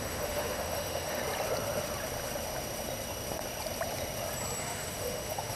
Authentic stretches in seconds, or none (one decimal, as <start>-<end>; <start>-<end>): 1.2-4.6